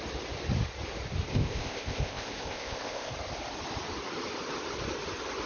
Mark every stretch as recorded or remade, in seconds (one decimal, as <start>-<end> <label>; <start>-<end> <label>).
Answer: 0.0-1.3 recorded; 1.3-3.1 remade; 3.1-5.5 recorded